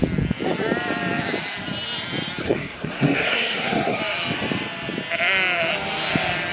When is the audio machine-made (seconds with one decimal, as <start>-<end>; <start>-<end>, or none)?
2.4-4.0